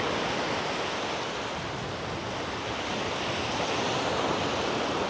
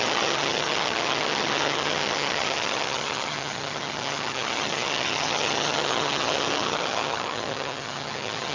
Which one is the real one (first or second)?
first